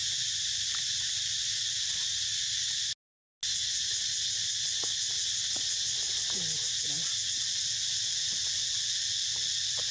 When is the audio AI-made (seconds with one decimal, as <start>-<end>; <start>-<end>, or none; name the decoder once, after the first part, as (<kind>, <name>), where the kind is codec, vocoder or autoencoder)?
none